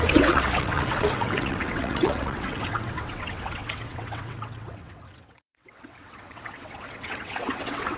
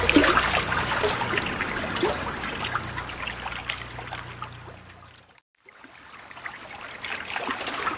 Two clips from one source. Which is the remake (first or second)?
first